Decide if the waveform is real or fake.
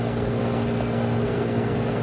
fake